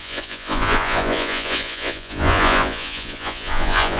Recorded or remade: remade